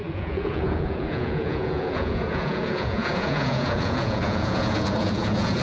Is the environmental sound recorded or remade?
remade